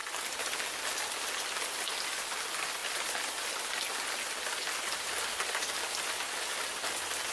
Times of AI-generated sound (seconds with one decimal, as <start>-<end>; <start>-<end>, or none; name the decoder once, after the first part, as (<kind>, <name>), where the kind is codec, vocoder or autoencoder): none